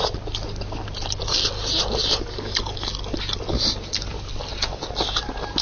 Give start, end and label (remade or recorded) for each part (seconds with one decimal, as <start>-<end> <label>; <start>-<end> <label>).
0.0-5.6 recorded

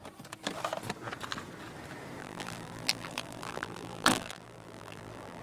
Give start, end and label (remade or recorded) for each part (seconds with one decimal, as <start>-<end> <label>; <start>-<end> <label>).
0.0-2.2 recorded; 2.2-5.4 remade

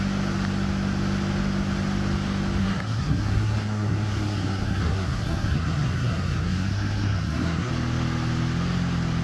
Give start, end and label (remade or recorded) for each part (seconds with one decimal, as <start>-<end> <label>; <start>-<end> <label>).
0.0-2.6 recorded; 2.6-7.7 remade; 7.7-9.2 recorded

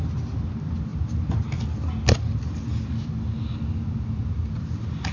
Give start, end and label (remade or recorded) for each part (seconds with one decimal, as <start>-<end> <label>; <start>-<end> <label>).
0.0-5.1 recorded

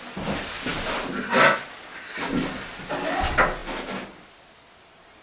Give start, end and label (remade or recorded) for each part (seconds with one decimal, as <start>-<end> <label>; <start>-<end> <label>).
0.0-5.2 recorded